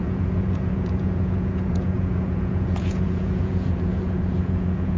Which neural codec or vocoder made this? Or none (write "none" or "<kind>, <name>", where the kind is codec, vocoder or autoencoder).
vocoder, Vocos